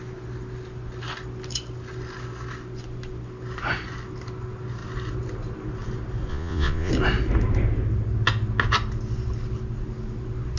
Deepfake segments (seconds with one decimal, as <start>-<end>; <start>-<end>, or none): 6.3-6.9